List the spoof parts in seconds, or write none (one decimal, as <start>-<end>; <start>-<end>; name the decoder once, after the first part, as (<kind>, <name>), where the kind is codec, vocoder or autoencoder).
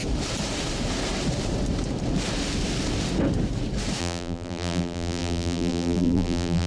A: 4.0-6.7 (vocoder, BigVGAN v2)